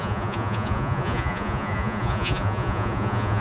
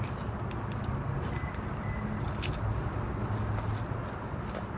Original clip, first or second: second